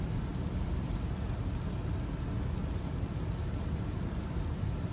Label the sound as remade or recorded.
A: recorded